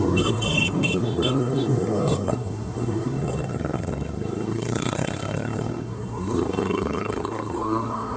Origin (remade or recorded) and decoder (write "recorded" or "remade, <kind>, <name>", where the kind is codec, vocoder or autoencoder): remade, codec, SNAC